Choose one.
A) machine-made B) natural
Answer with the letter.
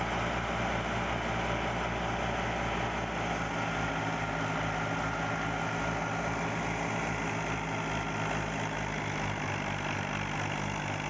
B